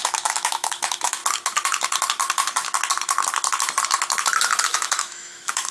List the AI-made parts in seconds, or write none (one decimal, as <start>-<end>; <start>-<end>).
0.0-1.2; 4.6-5.7